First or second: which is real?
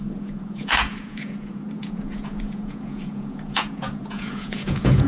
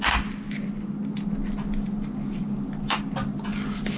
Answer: second